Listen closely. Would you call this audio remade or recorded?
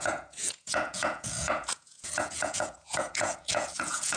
remade